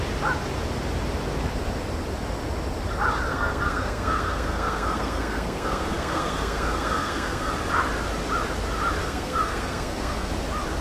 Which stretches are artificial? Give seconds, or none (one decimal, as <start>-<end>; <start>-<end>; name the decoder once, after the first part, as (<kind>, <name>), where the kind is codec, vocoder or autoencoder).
3.3-7.5 (codec, SNAC); 9.0-10.3